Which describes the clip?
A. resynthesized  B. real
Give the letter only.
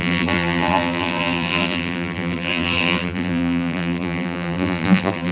A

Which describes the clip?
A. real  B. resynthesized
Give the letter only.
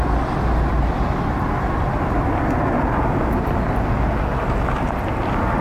A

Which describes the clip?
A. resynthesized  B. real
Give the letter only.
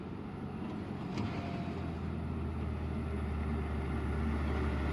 B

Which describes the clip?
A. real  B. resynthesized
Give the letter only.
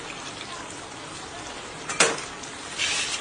A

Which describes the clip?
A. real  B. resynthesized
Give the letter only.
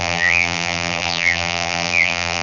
B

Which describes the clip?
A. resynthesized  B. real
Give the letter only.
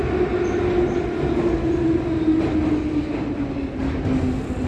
B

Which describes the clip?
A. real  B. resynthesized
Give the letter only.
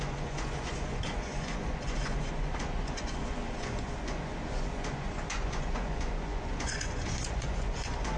B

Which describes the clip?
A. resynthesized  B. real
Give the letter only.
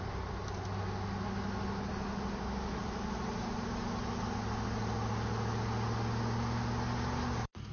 B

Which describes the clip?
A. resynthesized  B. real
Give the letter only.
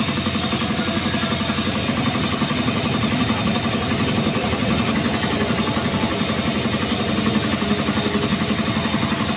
B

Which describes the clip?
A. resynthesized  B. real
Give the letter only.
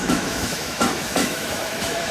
A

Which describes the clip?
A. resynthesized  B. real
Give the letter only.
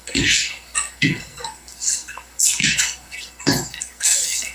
A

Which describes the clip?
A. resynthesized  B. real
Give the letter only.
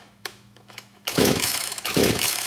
A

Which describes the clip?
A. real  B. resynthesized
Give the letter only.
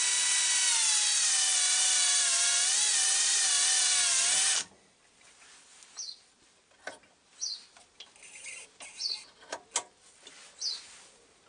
A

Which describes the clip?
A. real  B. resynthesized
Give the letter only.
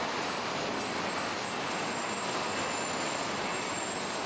A